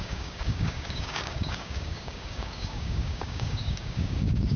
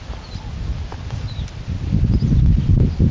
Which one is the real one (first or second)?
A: second